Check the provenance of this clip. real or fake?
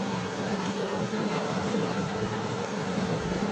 fake